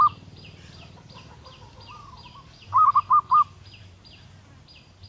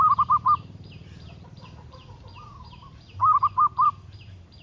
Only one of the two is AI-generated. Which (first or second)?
second